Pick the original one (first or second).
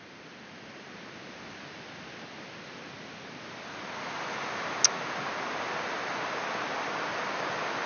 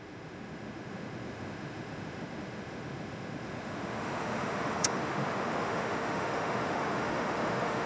first